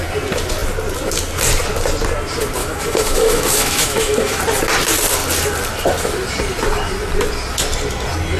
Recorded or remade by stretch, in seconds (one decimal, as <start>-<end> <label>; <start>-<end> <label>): 0.0-2.6 recorded; 2.6-4.4 remade; 4.4-8.4 recorded